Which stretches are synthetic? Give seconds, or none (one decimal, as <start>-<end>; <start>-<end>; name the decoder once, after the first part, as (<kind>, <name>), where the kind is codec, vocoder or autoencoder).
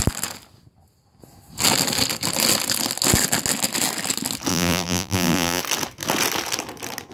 4.5-5.6 (vocoder, BigVGAN v2)